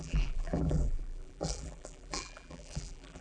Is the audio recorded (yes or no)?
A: no